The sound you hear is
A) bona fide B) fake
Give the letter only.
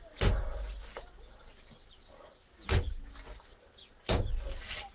A